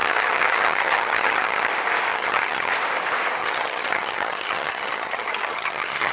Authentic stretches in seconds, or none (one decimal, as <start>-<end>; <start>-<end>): 1.7-2.1; 2.7-3.4